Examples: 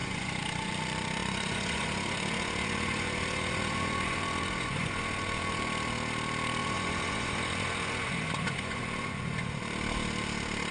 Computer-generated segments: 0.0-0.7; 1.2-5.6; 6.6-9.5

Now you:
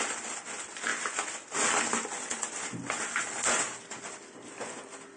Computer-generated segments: none